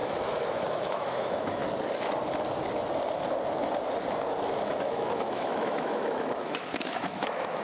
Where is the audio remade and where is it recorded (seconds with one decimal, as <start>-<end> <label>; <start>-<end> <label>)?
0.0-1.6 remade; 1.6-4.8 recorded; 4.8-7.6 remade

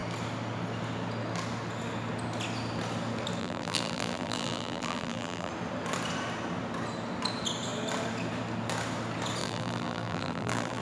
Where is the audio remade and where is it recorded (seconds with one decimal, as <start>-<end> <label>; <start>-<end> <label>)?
0.0-3.4 recorded; 3.4-5.5 remade; 5.5-9.4 recorded; 9.4-10.8 remade

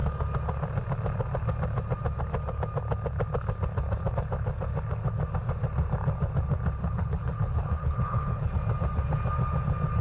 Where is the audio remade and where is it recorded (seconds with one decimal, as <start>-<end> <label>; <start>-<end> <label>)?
0.0-6.8 recorded; 6.8-8.5 remade; 8.5-10.0 recorded

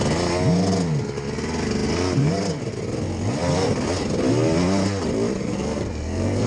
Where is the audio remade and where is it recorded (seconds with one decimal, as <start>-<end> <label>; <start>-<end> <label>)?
0.0-5.4 recorded; 5.4-6.5 remade

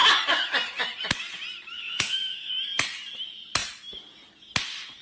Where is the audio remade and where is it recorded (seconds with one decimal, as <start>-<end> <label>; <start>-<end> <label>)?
0.0-1.8 recorded; 1.8-2.5 remade; 2.5-5.0 recorded